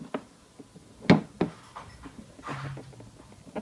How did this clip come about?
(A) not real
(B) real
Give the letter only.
B